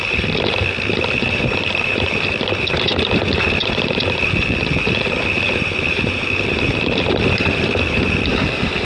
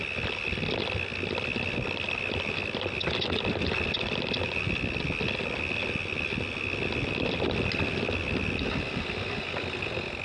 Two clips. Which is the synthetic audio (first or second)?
first